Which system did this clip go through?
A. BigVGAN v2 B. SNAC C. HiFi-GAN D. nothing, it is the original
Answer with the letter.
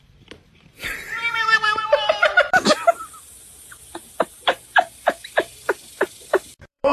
A